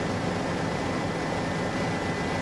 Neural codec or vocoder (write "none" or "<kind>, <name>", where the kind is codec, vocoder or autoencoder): none